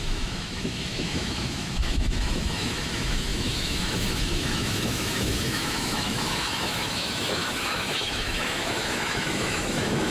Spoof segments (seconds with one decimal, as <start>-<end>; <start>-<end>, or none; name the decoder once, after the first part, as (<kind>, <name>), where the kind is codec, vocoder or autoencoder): 0.0-10.1 (autoencoder, DAC-VAE)

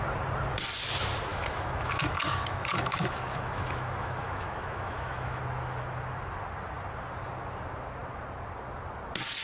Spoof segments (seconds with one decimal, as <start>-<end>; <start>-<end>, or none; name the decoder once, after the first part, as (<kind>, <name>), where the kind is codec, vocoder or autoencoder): 1.3-5.4 (autoencoder, DAC-VAE)

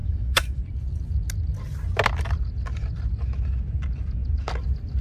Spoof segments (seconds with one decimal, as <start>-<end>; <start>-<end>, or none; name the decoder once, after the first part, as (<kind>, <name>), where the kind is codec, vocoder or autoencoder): 0.0-0.6 (autoencoder, DAC-VAE)